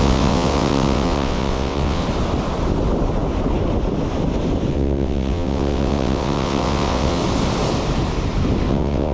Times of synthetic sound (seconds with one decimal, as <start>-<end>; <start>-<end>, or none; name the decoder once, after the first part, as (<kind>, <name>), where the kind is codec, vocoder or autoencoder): 0.0-2.0 (vocoder, WaveNeXt); 4.7-7.2; 8.7-9.1